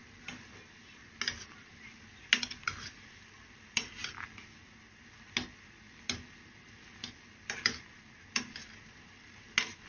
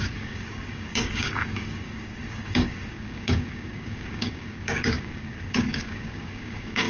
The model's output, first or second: second